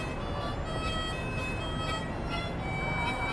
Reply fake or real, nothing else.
real